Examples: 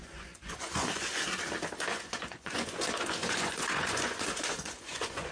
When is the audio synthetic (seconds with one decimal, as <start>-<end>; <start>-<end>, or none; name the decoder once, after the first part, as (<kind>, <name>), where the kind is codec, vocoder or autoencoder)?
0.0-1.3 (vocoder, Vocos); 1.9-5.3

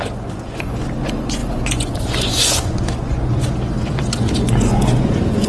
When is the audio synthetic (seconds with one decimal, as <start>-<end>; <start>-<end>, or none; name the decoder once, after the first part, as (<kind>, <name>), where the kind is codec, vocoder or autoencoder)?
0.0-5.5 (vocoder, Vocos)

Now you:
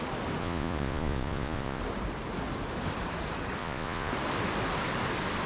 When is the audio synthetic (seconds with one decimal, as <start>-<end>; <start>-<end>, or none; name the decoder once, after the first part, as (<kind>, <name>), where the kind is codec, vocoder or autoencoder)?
0.4-1.8 (vocoder, Vocos); 3.6-4.1

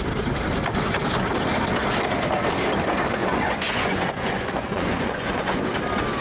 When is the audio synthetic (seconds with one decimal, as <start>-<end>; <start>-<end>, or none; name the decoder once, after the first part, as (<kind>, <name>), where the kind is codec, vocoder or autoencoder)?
3.2-5.6 (vocoder, Vocos)

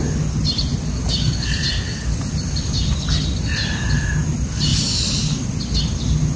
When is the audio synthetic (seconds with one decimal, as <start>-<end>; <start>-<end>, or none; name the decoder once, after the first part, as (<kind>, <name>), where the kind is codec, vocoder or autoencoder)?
none